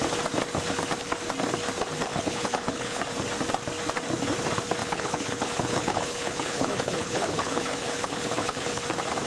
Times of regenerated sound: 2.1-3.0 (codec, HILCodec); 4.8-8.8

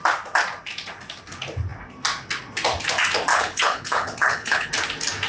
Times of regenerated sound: 3.3-4.7 (codec, HILCodec)

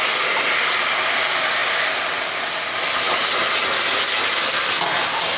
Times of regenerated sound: none

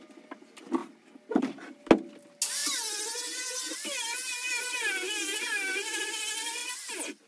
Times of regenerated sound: none

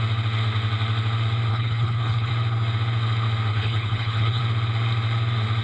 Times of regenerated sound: 1.5-2.3 (codec, HILCodec); 3.5-4.4

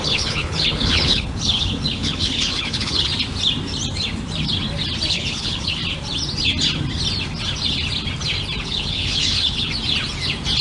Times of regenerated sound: 0.0-3.1 (codec, HILCodec); 5.1-5.8; 8.6-9.7

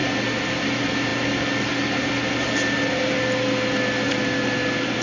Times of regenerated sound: none